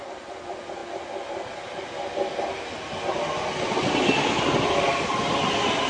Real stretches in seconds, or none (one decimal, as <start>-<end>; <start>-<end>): 0.0-5.9